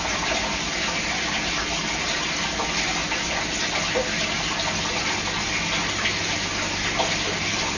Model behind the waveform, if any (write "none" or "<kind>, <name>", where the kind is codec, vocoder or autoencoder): none